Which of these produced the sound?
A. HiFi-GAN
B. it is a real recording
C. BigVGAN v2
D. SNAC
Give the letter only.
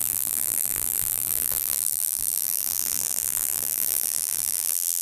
C